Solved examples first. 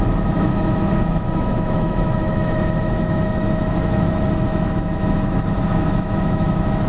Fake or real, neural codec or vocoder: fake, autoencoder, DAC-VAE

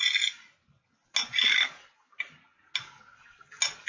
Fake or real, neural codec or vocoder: real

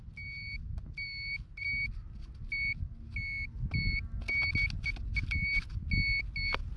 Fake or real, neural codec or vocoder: real